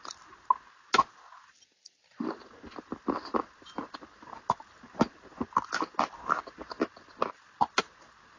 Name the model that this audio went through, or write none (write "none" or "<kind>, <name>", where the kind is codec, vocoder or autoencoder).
none